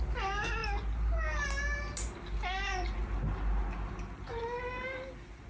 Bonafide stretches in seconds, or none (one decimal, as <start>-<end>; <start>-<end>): 0.0-5.5